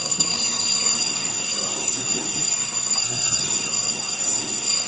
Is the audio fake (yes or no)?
yes